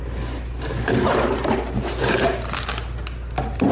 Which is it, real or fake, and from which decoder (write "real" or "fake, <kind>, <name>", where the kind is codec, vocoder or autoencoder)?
real